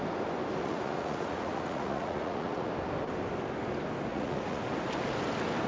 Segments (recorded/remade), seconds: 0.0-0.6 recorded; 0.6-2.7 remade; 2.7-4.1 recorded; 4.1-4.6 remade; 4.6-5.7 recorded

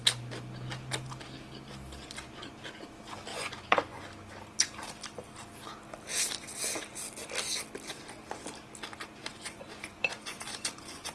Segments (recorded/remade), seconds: 0.0-3.3 recorded; 3.3-4.0 remade; 4.0-9.2 recorded; 9.2-11.1 remade

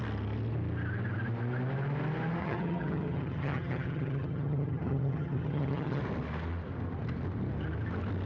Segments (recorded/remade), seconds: 0.0-2.4 recorded; 2.4-6.0 remade; 6.0-8.3 recorded

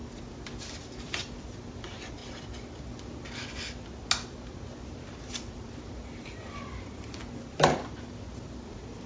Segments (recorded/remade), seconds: 0.0-2.2 remade; 2.2-4.8 recorded; 4.8-9.1 remade

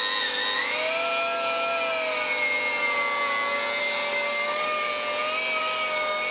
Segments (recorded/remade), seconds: 0.0-3.8 recorded; 3.8-4.9 remade; 4.9-5.6 recorded; 5.6-6.3 remade

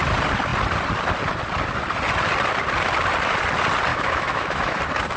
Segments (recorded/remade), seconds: 0.0-3.9 recorded; 3.9-4.8 remade; 4.8-5.2 recorded